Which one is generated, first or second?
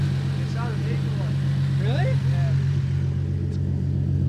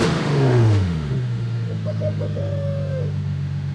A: second